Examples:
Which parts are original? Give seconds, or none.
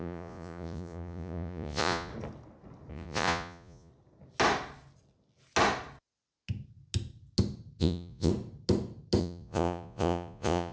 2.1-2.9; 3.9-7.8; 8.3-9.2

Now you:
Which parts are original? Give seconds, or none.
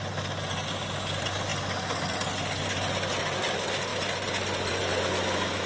0.0-5.7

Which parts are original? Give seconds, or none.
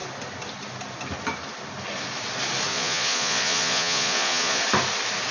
0.0-2.7; 4.6-5.3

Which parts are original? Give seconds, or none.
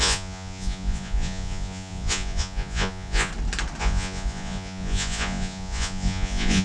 3.3-3.8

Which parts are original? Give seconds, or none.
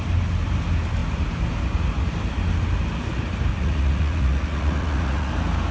0.0-3.5; 5.3-5.7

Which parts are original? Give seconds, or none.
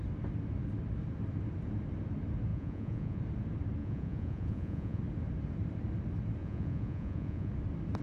0.0-2.5; 3.2-3.8; 5.0-6.4; 7.5-8.0